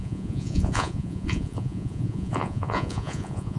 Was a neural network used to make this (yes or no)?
yes